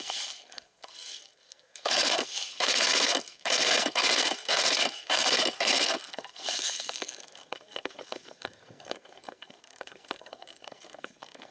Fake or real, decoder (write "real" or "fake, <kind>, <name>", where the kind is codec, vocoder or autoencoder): fake, codec, SNAC